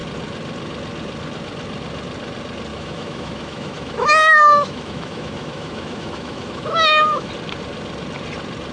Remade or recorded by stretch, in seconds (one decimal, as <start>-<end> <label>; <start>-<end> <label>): 0.0-2.7 recorded; 2.7-7.3 remade; 7.3-8.7 recorded